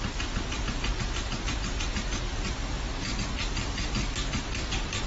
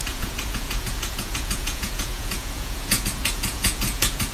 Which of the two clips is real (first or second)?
first